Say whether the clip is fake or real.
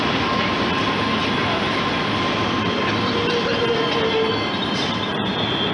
real